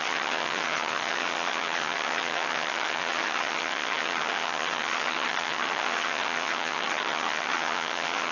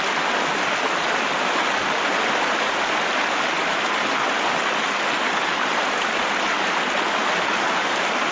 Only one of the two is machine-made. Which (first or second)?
first